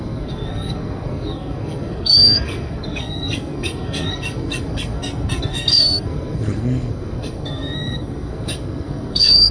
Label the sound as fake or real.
fake